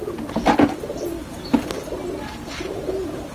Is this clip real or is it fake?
real